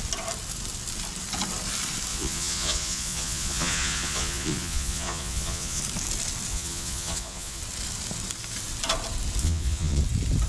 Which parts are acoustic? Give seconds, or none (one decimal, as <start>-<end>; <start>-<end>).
0.0-2.1; 5.8-6.5; 7.6-9.4; 10.0-10.5